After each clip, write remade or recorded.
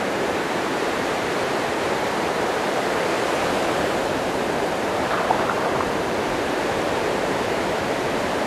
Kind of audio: remade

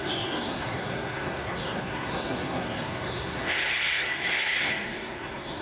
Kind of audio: remade